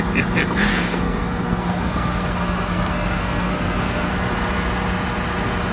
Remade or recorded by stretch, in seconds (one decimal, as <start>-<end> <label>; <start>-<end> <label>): 0.0-0.7 recorded; 0.7-4.1 remade; 4.1-5.7 recorded